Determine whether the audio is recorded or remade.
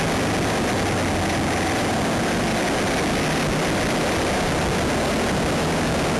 recorded